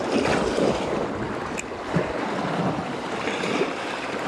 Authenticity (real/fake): real